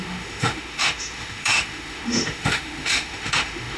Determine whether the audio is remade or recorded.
remade